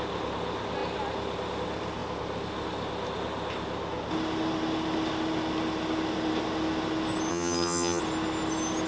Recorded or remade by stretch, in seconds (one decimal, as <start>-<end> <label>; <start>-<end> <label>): 0.0-7.3 recorded; 7.3-8.0 remade; 8.0-8.9 recorded